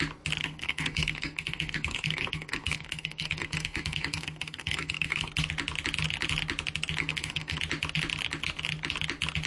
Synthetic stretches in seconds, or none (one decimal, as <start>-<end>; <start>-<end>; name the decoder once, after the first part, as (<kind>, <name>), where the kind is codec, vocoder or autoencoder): 0.4-5.3 (codec, SNAC); 7.0-7.6